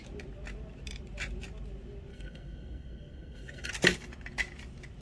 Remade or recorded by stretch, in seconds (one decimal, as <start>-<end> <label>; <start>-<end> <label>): 0.0-2.1 recorded; 2.1-3.7 remade; 3.7-5.0 recorded